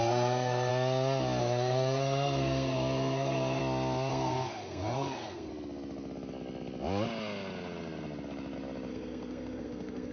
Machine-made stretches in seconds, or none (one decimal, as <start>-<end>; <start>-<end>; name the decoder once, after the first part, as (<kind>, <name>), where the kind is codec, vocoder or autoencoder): 0.0-0.7 (codec, SNAC); 1.4-3.6; 4.1-5.5; 8.9-10.1